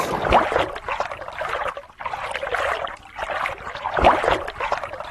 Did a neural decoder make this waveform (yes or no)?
no